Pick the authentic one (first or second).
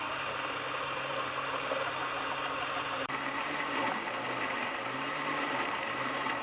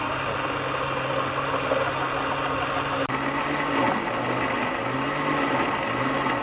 second